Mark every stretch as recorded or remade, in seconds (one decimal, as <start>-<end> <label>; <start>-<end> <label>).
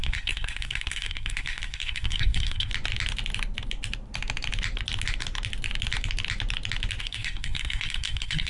0.0-2.7 remade; 2.7-7.0 recorded; 7.0-8.5 remade